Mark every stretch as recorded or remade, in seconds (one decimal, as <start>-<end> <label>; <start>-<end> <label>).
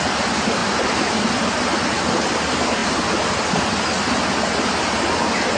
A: 0.0-5.6 recorded